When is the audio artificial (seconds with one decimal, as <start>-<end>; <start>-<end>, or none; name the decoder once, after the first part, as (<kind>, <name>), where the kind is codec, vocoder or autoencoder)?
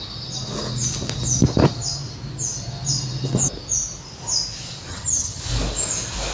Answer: 4.9-5.4 (vocoder, HiFi-GAN)